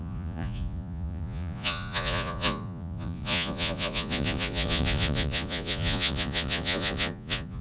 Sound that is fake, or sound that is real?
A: fake